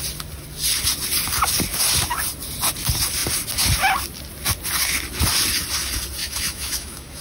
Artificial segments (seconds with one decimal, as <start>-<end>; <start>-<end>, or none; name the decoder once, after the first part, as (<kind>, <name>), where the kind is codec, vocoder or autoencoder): 6.2-7.2 (autoencoder, DAC-VAE)